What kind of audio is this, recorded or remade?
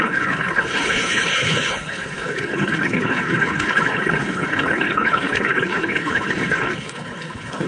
remade